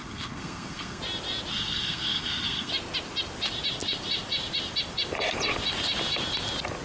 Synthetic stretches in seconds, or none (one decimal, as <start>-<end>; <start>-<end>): 0.0-1.0; 1.5-2.7